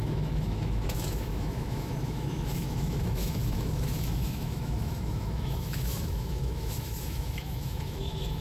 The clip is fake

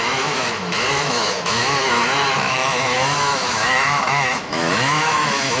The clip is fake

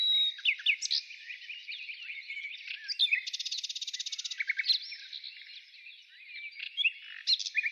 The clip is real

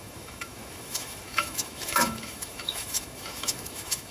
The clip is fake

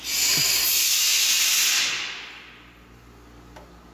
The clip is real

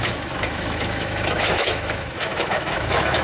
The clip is fake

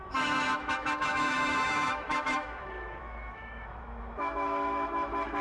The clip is fake